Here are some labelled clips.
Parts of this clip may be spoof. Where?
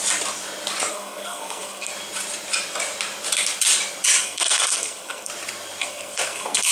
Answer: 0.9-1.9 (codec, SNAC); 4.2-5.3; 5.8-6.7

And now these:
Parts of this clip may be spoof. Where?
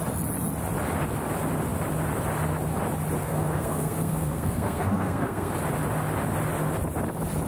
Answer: 3.2-5.5 (codec, SNAC)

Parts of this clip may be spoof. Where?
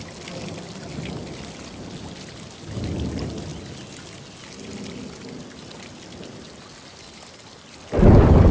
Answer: none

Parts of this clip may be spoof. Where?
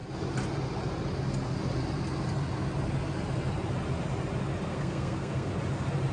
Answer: 4.7-5.5 (codec, SNAC)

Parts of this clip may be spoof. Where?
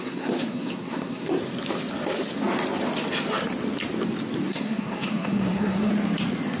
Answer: 0.0-1.4 (codec, SNAC); 4.5-5.9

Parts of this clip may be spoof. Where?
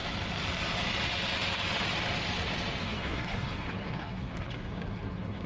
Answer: 2.8-5.5 (codec, SNAC)